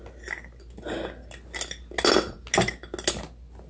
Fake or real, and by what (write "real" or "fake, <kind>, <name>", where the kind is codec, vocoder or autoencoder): real